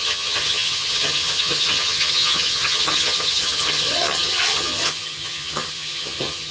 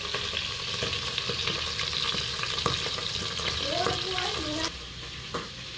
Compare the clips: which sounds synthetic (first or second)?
first